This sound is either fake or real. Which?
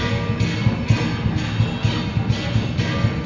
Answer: real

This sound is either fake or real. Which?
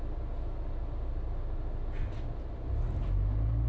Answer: real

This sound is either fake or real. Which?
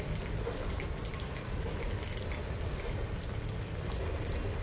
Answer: real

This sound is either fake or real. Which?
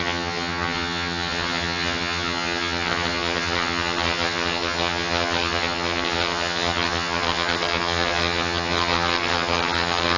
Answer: fake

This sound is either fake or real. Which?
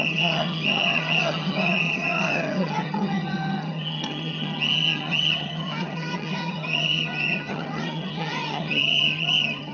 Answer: fake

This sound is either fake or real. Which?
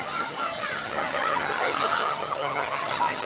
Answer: fake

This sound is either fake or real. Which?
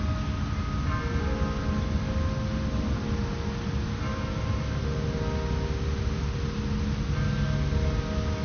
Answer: real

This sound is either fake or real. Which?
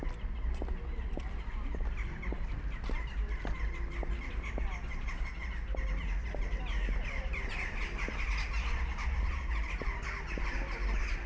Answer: real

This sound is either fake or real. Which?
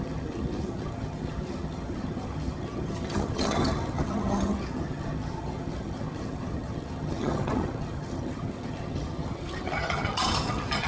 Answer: fake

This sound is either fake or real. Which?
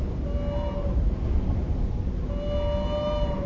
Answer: real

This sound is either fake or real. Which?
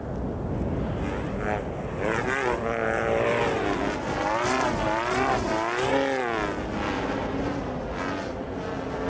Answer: real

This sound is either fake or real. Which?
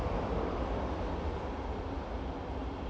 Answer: real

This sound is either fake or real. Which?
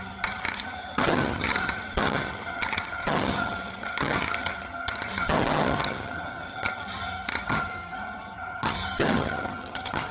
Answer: fake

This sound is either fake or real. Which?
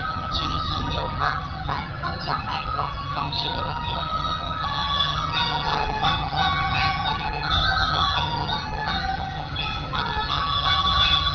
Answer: fake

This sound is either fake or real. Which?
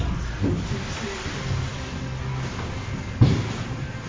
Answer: real